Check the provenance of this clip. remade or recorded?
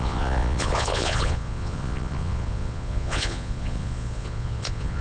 remade